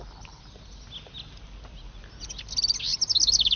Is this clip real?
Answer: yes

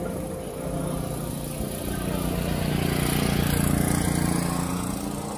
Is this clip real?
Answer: yes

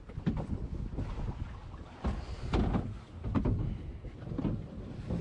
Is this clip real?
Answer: yes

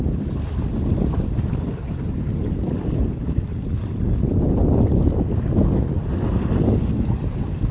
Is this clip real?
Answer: yes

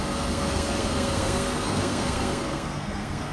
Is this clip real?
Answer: no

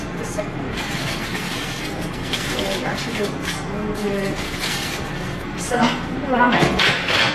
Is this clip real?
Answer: no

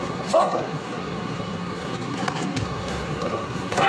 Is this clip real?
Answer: no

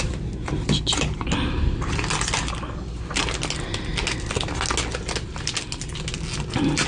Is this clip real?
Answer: yes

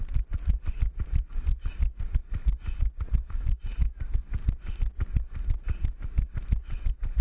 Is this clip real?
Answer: yes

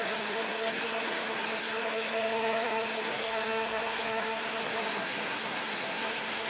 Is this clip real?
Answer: no